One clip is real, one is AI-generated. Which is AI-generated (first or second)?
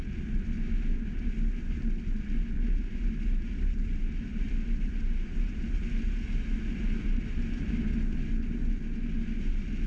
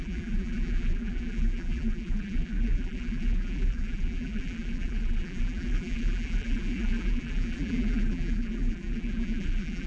second